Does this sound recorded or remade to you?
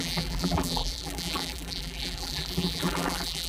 remade